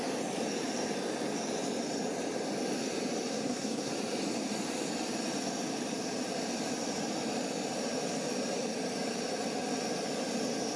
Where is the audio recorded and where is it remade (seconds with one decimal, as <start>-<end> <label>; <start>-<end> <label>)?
0.0-3.3 recorded; 3.3-3.9 remade; 3.9-10.8 recorded